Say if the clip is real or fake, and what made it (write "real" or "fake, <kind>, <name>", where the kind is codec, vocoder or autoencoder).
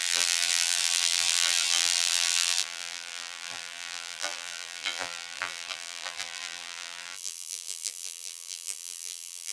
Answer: fake, vocoder, BigVGAN v2